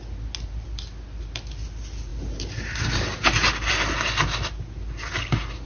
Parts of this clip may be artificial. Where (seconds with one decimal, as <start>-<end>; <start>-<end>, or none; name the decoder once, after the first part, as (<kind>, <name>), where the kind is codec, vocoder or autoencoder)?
none